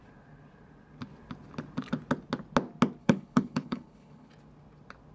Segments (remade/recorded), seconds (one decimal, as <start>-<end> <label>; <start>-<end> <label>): 0.0-3.0 recorded; 3.0-4.3 remade; 4.3-5.1 recorded